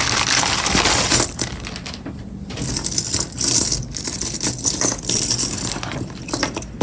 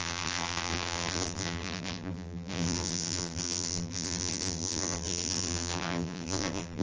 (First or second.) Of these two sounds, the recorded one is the first